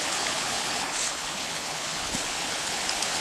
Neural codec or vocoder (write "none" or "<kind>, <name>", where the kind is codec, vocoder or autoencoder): codec, HILCodec